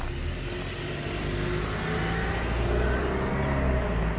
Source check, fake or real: real